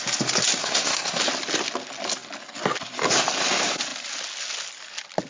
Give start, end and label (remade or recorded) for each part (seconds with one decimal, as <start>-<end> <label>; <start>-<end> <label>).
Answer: 0.0-0.6 recorded; 0.6-1.2 remade; 1.2-5.3 recorded